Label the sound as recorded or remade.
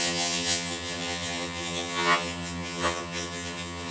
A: remade